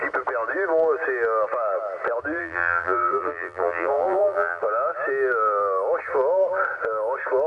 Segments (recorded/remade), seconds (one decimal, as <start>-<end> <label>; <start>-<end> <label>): 0.0-2.4 recorded; 2.4-4.6 remade; 4.6-7.5 recorded